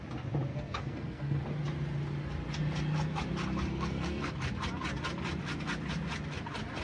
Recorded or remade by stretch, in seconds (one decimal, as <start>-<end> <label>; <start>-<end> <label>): 0.0-0.5 recorded; 0.5-1.4 remade; 1.4-3.7 recorded; 3.7-4.3 remade; 4.3-6.8 recorded